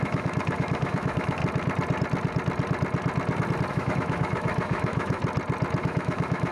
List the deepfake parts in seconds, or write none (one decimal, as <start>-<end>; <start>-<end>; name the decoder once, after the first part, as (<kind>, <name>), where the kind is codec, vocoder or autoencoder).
0.0-1.4 (autoencoder, DAC-VAE); 3.7-5.2; 5.8-6.5